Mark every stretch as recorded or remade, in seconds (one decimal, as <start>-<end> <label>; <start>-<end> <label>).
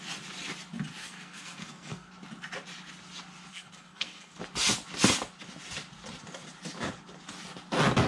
0.0-1.0 recorded; 1.0-2.1 remade; 2.1-3.5 recorded; 3.5-4.4 remade; 4.4-8.1 recorded